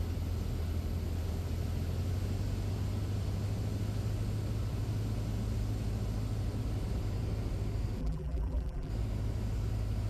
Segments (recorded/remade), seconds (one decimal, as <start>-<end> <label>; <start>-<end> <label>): 0.0-8.0 recorded; 8.0-8.9 remade; 8.9-10.1 recorded